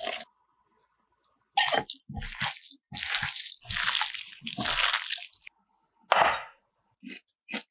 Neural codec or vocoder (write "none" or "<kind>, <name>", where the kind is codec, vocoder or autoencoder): none